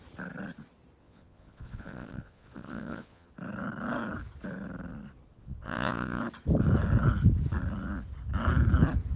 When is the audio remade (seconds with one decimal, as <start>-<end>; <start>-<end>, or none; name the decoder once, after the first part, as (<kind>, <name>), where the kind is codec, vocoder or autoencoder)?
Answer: 1.0-3.3 (vocoder, Vocos); 5.3-6.2

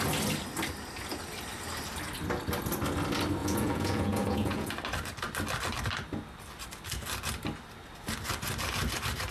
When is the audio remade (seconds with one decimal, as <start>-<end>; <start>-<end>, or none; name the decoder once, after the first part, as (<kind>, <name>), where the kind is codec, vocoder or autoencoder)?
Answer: 3.4-4.7 (vocoder, Vocos)

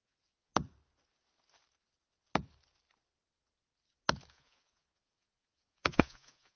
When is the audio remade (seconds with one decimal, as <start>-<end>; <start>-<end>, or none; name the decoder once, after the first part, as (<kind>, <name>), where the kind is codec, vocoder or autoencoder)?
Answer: 0.0-0.5 (vocoder, Vocos); 4.3-6.6